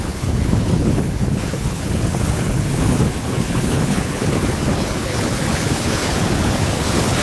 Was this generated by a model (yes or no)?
yes